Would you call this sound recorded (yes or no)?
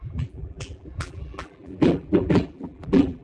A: no